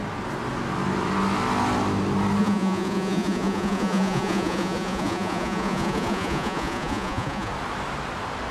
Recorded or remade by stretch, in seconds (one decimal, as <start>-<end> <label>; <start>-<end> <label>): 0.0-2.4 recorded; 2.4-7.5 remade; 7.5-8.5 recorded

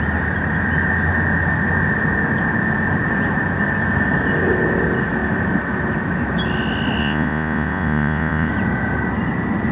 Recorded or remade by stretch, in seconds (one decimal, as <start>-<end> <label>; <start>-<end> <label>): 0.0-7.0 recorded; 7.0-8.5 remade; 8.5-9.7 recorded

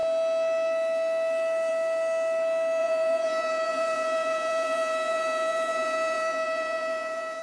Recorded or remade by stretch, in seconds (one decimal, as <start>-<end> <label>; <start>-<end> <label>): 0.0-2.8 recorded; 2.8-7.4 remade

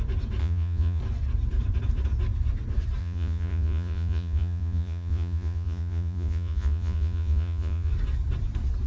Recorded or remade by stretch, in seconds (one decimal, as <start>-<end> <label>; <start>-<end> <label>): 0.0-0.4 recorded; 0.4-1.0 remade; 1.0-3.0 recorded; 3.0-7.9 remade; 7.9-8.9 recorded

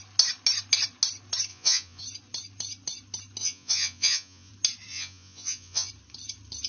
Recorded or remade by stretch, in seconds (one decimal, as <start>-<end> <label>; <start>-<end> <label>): 0.0-1.5 recorded; 1.5-2.0 remade; 2.0-3.4 recorded; 3.4-4.5 remade; 4.5-4.9 recorded; 4.9-5.9 remade; 5.9-6.7 recorded

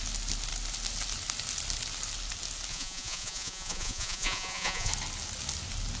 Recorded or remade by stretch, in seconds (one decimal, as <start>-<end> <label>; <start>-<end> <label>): 0.0-2.7 recorded; 2.7-4.9 remade; 4.9-6.0 recorded

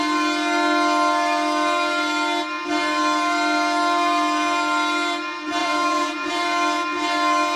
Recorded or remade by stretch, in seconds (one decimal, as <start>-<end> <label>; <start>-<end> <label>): 0.0-5.6 recorded; 5.6-6.3 remade; 6.3-7.6 recorded